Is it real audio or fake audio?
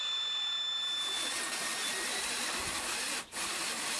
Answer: real